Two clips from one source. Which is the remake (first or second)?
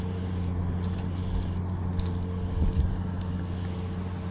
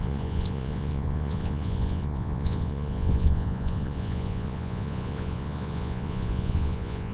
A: second